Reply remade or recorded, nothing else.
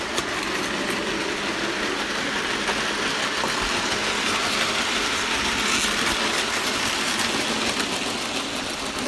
recorded